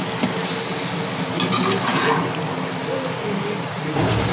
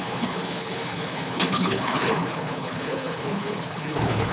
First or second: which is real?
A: first